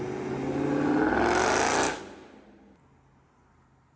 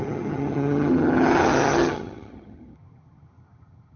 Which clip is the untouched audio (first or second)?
first